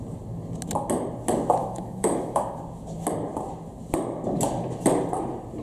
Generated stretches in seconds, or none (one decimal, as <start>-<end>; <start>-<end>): 1.6-2.6